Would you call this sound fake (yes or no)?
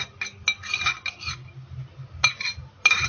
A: no